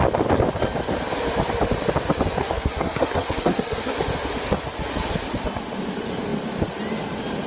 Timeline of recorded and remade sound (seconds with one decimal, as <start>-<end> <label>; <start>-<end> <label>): 0.0-2.4 recorded; 2.4-3.9 remade; 3.9-7.5 recorded